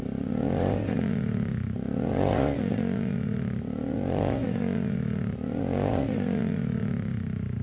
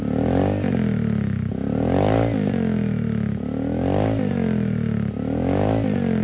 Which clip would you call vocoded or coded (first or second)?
first